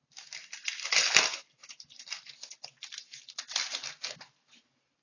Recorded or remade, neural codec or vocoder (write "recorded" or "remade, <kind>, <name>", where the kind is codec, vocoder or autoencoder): recorded